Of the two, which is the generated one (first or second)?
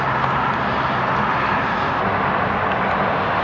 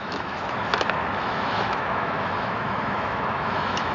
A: second